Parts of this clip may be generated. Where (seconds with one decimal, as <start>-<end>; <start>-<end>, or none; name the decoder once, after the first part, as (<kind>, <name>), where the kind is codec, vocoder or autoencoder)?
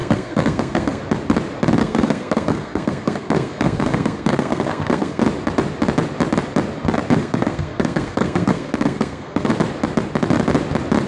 0.0-1.0 (codec, SNAC); 1.8-5.2; 7.2-9.5